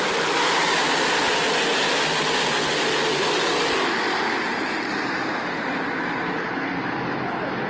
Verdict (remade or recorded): recorded